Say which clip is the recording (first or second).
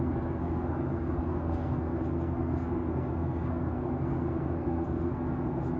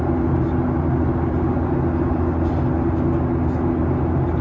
second